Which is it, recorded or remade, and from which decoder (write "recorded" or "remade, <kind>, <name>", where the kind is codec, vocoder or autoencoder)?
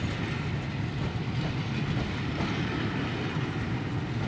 remade, vocoder, BigVGAN v2